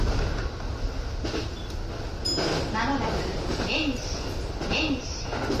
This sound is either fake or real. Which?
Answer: real